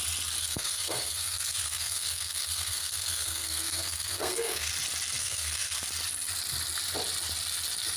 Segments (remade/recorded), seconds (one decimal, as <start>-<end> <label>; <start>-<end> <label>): 0.0-0.4 recorded; 0.4-4.7 remade; 4.7-5.2 recorded; 5.2-5.8 remade; 5.8-8.0 recorded